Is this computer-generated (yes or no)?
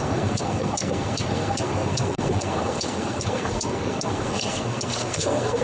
yes